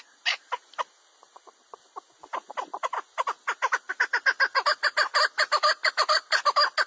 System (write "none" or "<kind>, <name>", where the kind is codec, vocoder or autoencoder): none